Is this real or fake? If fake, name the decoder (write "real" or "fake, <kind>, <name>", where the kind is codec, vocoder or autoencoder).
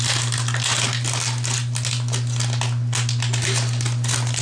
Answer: real